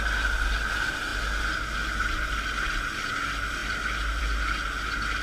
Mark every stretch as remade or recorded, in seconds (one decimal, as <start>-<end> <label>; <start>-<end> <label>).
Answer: 0.0-5.2 recorded